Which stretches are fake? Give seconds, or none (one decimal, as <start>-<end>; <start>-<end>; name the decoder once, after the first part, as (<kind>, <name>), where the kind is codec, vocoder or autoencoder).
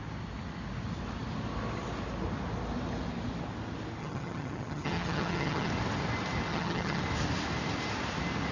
4.0-5.7 (vocoder, HiFi-GAN); 6.5-7.0